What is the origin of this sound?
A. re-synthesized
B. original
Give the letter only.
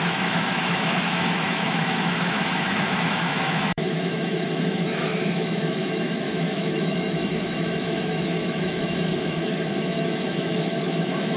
A